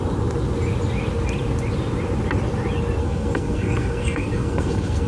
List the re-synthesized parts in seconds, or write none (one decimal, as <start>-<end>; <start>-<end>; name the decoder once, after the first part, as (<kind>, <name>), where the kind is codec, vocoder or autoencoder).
3.0-5.1 (codec, SNAC)